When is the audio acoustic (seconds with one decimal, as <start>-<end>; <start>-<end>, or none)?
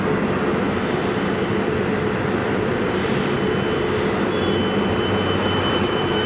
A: 0.0-2.4; 3.5-6.3